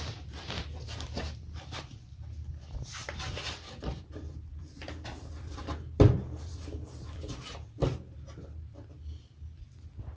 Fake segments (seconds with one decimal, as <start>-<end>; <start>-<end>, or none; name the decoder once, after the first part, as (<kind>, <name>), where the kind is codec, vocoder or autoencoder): 3.0-7.5 (vocoder, BigVGAN v2)